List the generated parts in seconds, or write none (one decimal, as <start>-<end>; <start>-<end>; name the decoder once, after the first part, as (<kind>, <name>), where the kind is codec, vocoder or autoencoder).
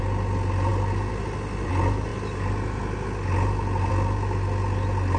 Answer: none